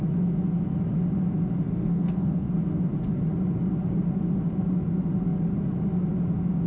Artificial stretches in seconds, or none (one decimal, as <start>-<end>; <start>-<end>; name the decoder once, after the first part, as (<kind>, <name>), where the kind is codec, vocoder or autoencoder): 1.7-2.5 (codec, SNAC)